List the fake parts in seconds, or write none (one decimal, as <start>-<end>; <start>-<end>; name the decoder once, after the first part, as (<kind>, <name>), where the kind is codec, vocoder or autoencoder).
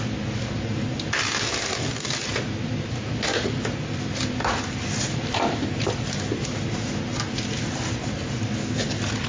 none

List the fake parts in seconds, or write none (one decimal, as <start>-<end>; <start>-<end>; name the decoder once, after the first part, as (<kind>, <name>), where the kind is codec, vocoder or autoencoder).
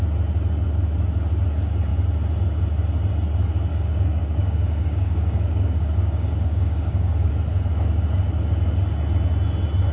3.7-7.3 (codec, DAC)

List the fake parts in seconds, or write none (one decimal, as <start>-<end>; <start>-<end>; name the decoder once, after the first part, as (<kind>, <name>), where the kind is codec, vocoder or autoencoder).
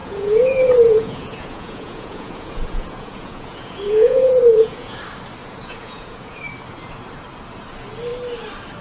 0.0-5.0 (vocoder, Vocos); 5.4-6.4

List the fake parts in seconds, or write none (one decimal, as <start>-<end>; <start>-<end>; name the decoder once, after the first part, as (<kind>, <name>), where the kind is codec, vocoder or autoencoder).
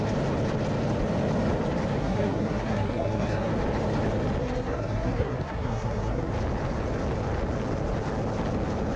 2.0-3.5 (codec, SNAC); 4.4-6.3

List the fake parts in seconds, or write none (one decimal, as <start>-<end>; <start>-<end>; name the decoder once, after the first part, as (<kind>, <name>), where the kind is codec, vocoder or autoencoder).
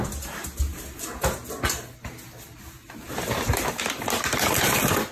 none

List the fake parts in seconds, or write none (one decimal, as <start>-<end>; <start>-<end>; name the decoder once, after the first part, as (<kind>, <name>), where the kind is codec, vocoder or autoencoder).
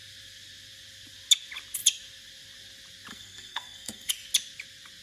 3.1-4.1 (codec, SNAC)